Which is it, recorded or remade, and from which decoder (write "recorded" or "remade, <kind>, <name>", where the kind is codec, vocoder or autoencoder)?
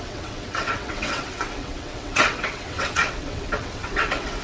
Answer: remade, vocoder, WaveNeXt